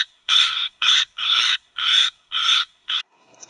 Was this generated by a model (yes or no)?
yes